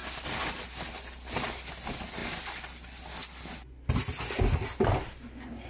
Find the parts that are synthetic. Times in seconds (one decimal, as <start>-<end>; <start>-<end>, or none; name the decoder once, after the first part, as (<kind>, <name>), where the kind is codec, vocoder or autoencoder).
none